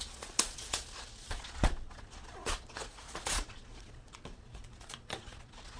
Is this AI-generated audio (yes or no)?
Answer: yes